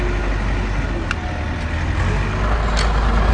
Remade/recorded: recorded